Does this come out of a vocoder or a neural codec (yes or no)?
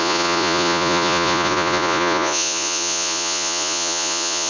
yes